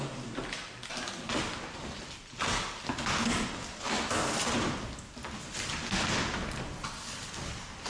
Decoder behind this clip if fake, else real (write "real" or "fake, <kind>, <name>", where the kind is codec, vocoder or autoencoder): real